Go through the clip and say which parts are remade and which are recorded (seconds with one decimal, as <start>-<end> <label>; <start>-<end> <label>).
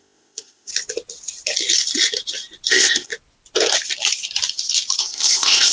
0.0-0.7 remade; 0.7-2.7 recorded; 2.7-3.1 remade; 3.1-5.0 recorded; 5.0-5.7 remade